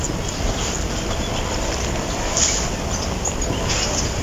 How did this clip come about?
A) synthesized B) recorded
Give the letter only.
B